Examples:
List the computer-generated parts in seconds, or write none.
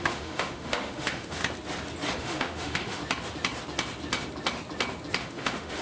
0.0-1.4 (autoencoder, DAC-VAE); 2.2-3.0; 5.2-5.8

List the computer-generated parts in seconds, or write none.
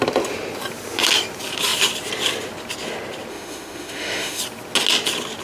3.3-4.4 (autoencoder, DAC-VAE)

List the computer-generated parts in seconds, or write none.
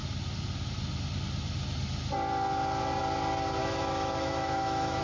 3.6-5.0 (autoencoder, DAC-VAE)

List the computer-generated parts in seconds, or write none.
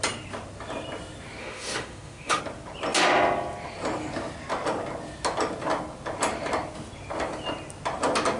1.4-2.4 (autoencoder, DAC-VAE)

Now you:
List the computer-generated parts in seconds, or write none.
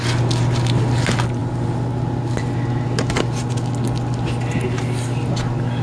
none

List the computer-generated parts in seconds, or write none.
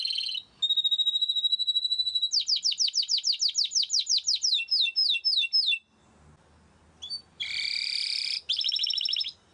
none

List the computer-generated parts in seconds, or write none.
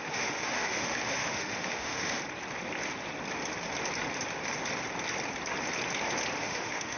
0.0-2.2 (autoencoder, DAC-VAE); 6.4-7.0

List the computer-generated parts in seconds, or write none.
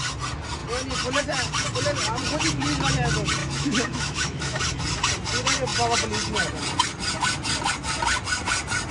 3.4-4.6 (autoencoder, DAC-VAE)